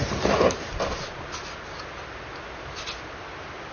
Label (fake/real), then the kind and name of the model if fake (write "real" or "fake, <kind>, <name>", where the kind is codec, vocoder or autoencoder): real